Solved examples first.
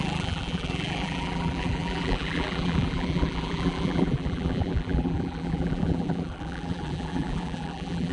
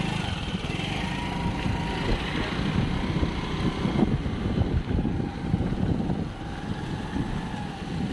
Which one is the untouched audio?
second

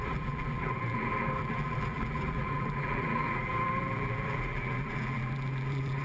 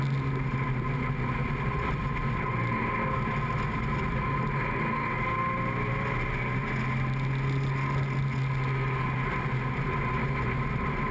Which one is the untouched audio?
second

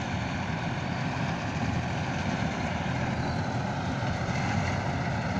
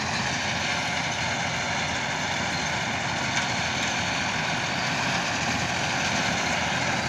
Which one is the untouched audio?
second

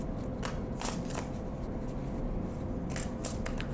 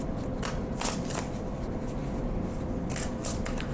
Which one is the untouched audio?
first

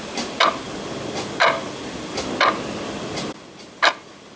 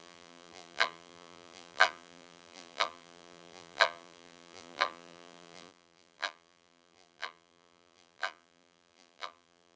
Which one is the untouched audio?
first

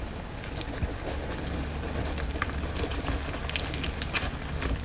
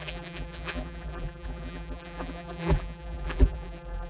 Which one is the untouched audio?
first